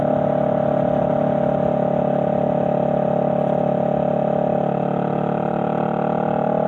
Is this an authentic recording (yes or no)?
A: yes